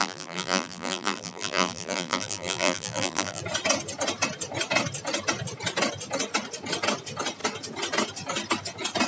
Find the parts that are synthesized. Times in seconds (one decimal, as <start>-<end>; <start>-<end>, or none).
0.0-3.4